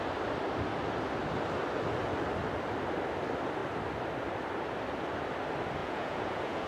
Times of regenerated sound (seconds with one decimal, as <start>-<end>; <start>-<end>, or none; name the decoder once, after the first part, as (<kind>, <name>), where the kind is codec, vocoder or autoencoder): 5.8-6.7 (vocoder, Vocos)